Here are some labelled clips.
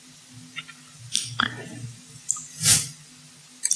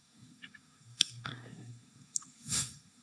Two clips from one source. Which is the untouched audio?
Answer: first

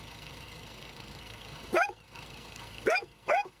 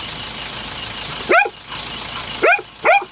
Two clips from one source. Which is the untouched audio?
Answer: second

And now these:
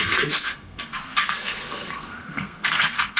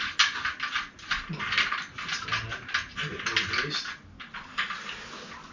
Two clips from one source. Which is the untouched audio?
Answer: second